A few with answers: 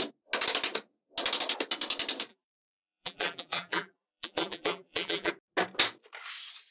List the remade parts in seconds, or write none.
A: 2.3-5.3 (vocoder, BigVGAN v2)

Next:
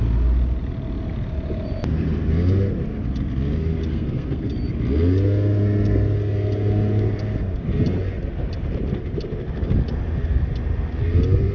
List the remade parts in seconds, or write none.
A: 3.9-4.5 (codec, SNAC)

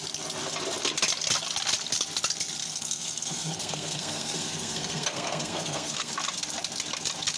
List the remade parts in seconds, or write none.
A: 2.6-6.1 (codec, SNAC)

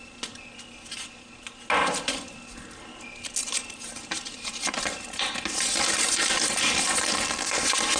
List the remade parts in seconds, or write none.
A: 3.4-5.2 (vocoder, BigVGAN v2)

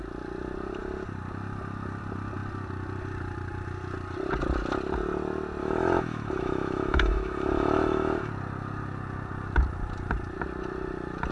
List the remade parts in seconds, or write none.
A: 5.6-8.3 (autoencoder, DAC-VAE)

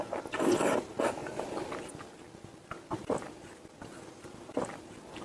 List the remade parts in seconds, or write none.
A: none